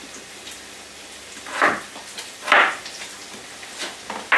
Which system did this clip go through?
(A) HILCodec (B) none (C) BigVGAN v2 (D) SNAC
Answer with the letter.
B